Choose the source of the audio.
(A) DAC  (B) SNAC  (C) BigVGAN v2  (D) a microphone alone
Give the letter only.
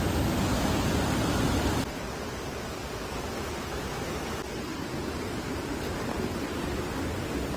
D